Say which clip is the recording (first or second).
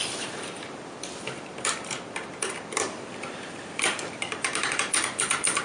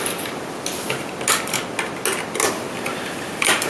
second